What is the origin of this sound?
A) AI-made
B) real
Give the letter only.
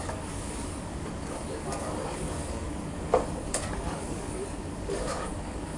A